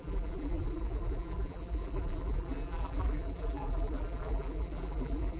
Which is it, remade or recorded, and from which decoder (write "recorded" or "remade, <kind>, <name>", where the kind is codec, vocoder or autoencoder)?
remade, vocoder, BigVGAN v2